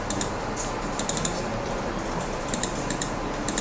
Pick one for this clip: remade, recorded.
remade